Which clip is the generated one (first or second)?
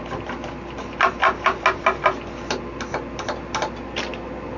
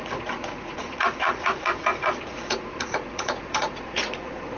second